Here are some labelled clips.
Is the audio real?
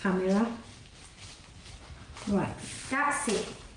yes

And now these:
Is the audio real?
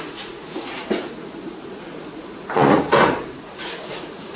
no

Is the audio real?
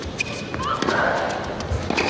yes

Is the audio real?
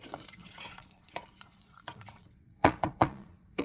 no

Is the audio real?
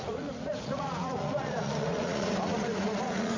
no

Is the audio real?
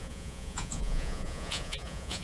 no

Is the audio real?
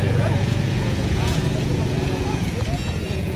no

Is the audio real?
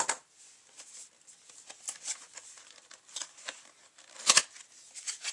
yes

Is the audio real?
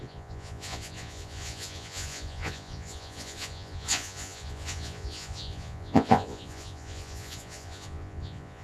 no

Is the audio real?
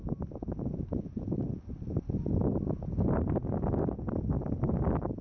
yes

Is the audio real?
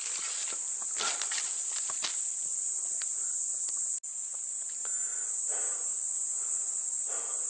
yes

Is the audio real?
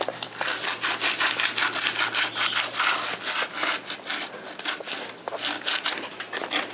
yes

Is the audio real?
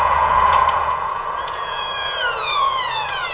no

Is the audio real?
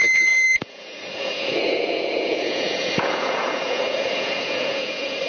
no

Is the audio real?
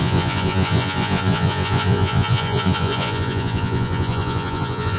no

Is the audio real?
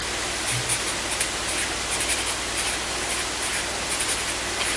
yes